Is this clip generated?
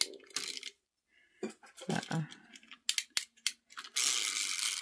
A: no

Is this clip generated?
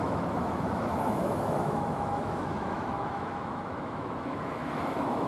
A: yes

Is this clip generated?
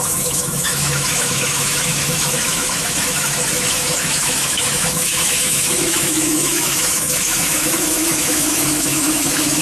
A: yes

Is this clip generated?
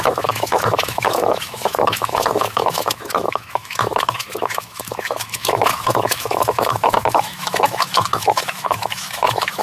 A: yes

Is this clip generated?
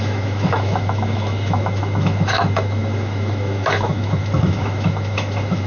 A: yes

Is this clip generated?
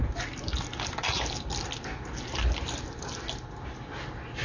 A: no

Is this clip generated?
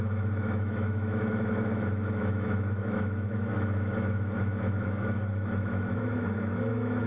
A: yes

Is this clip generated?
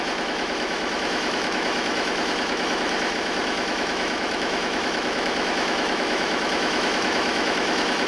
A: yes